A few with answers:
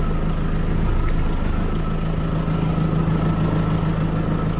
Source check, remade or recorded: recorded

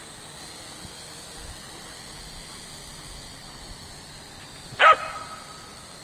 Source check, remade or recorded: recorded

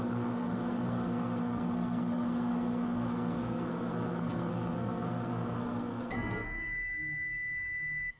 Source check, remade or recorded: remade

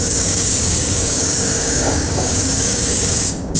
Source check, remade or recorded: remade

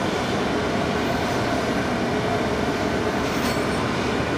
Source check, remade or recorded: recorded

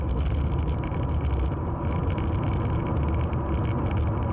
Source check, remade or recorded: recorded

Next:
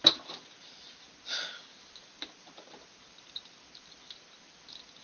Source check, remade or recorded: recorded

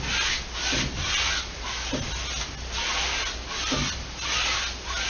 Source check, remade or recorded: recorded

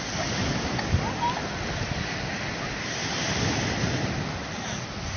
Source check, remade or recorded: recorded